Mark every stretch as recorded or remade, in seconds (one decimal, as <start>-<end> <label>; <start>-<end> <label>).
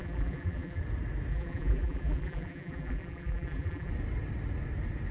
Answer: 0.0-0.8 remade; 0.8-1.3 recorded; 1.3-3.9 remade; 3.9-5.1 recorded